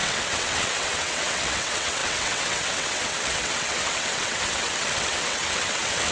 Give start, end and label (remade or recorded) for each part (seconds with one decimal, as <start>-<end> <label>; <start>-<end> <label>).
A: 0.0-6.1 remade